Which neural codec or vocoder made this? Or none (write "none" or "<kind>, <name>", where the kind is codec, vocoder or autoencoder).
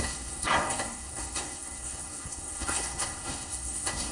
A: codec, SNAC